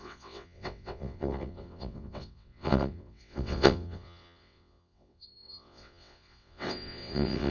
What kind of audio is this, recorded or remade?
remade